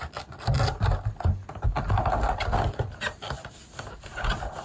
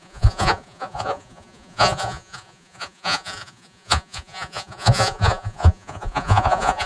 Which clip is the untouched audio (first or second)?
first